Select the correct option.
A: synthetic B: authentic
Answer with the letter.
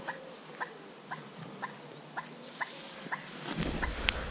A